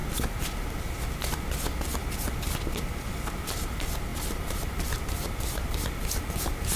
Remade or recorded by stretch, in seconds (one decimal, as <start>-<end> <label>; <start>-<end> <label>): 0.0-6.8 recorded